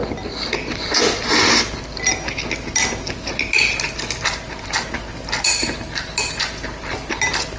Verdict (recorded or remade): recorded